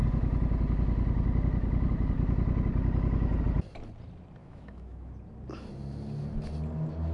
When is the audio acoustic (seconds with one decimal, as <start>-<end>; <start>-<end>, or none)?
0.0-4.4; 5.1-7.1